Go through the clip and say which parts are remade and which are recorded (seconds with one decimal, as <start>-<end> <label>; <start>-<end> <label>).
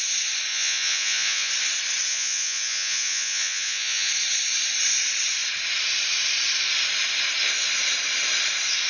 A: 0.0-0.5 recorded; 0.5-1.5 remade; 1.5-2.1 recorded; 2.1-4.1 remade; 4.1-8.9 recorded